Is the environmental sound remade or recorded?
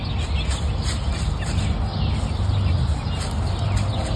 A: recorded